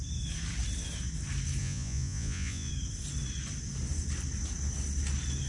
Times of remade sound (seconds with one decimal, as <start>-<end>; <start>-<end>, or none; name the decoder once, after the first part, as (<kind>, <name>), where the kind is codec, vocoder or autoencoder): 1.6-2.7 (vocoder, Vocos)